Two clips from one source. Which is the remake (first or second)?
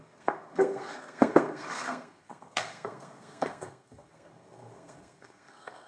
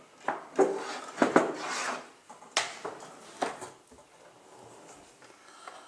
first